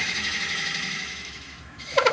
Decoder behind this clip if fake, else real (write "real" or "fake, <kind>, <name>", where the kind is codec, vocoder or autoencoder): fake, autoencoder, DAC-VAE